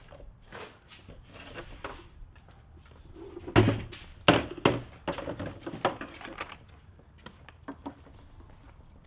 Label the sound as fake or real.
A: real